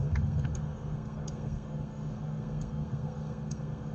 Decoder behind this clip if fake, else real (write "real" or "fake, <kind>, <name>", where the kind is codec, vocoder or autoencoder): fake, codec, SNAC